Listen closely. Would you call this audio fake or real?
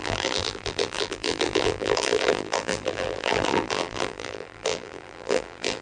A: fake